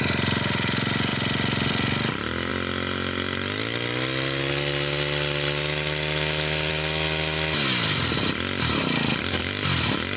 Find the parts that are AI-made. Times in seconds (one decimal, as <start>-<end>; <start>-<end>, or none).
none